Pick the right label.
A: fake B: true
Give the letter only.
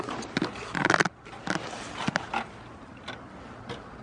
B